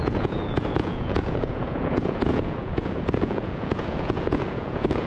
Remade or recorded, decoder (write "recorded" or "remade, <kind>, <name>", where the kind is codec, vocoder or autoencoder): remade, vocoder, Vocos